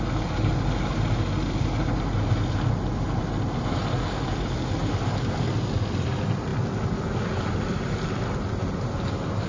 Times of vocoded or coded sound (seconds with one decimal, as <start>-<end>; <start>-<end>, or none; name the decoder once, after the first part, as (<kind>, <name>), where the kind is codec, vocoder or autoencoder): none

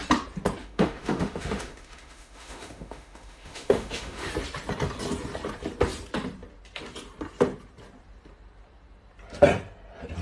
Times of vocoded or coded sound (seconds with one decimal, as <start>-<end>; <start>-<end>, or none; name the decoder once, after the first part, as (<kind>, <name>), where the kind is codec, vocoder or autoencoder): 0.6-4.3 (autoencoder, DAC-VAE)

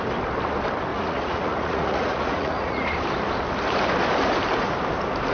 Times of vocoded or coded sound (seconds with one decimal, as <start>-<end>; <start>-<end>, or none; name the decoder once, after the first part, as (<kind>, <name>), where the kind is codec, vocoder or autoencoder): 0.9-2.9 (vocoder, Vocos)